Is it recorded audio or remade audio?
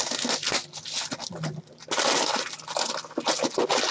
recorded